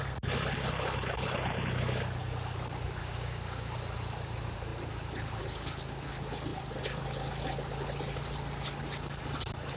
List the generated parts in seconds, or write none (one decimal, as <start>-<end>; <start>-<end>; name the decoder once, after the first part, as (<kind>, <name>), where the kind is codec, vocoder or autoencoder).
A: 3.0-3.8 (codec, DAC)